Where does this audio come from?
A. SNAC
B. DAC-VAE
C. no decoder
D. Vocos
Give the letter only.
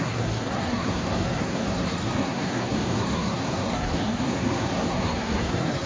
A